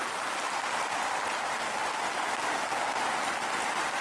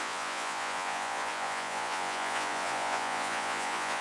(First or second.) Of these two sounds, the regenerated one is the second